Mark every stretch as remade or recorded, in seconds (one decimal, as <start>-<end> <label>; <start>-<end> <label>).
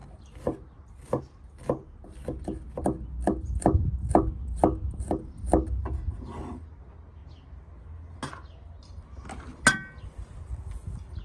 0.0-11.2 recorded